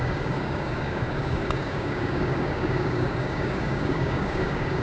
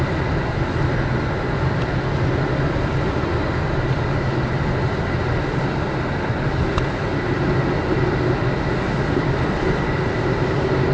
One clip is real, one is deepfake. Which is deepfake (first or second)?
first